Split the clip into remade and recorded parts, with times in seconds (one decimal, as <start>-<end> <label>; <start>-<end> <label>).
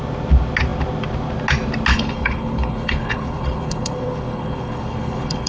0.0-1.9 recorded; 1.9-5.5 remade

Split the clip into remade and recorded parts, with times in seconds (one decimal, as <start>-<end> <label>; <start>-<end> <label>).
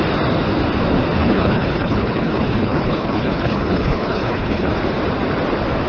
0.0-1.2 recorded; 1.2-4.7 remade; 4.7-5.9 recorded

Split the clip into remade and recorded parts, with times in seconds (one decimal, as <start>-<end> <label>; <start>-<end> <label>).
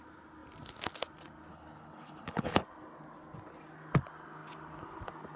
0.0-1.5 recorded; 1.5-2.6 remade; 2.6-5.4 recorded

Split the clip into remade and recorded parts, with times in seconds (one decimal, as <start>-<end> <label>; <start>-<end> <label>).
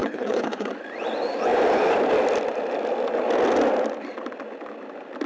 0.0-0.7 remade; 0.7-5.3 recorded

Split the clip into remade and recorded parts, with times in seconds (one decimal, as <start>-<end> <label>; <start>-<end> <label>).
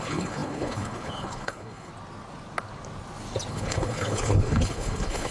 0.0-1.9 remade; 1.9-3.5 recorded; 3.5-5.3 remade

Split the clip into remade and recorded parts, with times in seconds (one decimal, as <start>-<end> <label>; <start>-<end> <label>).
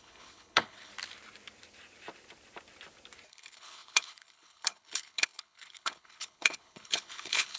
0.0-0.9 remade; 0.9-3.3 recorded; 3.3-7.6 remade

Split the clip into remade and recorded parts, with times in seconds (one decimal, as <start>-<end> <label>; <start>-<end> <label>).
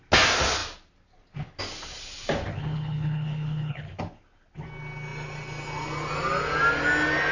0.0-2.5 recorded; 2.5-4.0 remade; 4.0-7.3 recorded